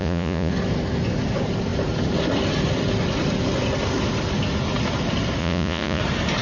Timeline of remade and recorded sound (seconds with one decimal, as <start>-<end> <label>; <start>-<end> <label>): 0.0-0.5 remade; 0.5-5.4 recorded; 5.4-6.0 remade; 6.0-6.4 recorded